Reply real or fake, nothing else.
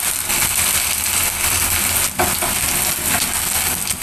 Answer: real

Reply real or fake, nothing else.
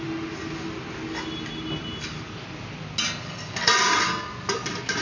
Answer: real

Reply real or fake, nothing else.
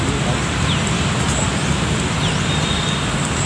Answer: real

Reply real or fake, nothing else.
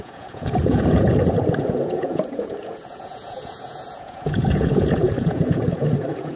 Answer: fake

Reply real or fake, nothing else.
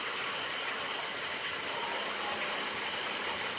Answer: real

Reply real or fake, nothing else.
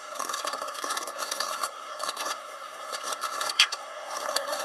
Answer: fake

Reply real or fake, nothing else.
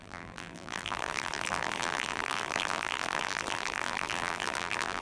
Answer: fake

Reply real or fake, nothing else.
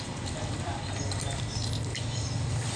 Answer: fake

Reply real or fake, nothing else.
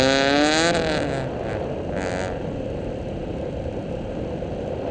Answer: real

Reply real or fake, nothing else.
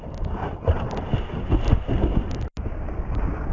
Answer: real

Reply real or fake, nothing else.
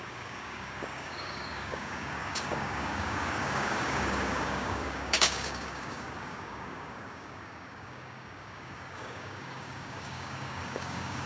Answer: fake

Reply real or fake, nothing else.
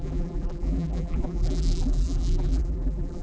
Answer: fake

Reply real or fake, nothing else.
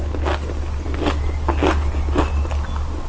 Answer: real